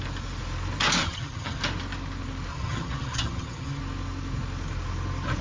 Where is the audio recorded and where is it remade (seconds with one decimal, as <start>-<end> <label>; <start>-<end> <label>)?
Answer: 0.0-1.0 recorded; 1.0-1.6 remade; 1.6-2.5 recorded; 2.5-3.8 remade; 3.8-5.4 recorded